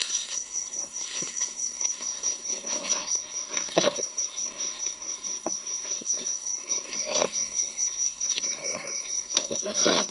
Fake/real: fake